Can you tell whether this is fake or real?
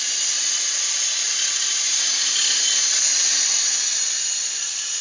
real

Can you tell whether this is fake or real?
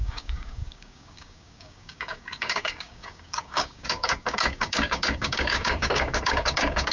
fake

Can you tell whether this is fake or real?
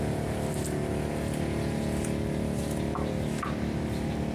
real